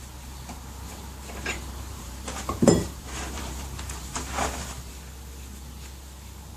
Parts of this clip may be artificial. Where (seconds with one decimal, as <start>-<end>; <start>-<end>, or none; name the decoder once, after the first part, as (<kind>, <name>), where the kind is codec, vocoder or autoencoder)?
0.9-4.9 (vocoder, BigVGAN v2)